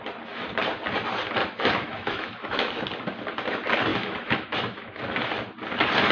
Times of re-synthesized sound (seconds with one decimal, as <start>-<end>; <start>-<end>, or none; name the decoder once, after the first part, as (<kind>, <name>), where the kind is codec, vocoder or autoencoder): 1.4-2.8 (autoencoder, DAC-VAE); 3.9-5.0